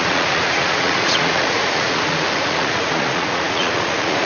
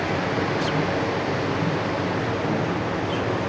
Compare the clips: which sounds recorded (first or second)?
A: second